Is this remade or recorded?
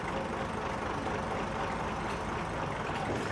recorded